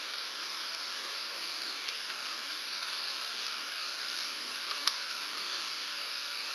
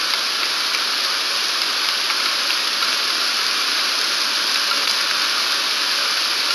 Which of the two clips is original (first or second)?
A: second